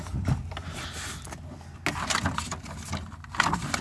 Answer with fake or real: real